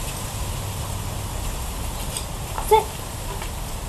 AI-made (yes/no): no